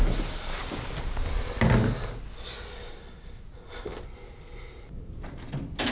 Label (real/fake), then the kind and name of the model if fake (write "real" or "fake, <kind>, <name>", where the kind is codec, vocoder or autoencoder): real